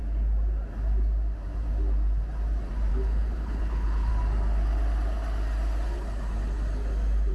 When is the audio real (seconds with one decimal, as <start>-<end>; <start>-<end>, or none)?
0.0-2.9; 4.1-7.3